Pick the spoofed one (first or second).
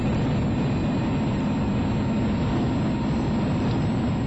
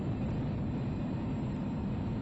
second